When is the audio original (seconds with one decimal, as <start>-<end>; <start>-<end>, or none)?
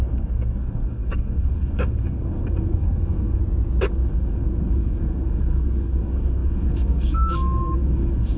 3.4-3.9